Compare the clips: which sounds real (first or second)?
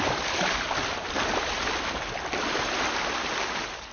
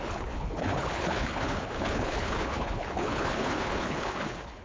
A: first